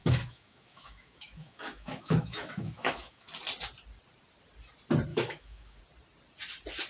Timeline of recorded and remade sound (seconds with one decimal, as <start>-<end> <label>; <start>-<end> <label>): 0.0-3.3 remade; 3.3-5.1 recorded; 5.1-5.8 remade; 5.8-6.9 recorded